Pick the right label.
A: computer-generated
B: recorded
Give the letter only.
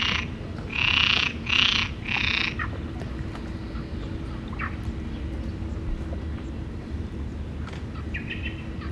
B